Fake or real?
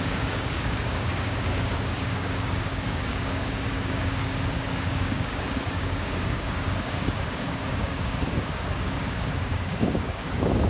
fake